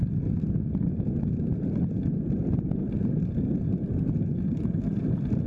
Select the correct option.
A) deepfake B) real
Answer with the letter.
B